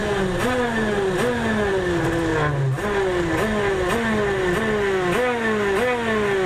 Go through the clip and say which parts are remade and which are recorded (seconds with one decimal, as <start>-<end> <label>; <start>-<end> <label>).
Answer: 0.0-6.5 recorded